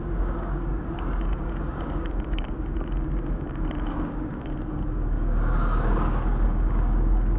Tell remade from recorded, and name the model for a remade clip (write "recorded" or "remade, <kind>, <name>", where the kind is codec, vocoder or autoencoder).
remade, codec, DAC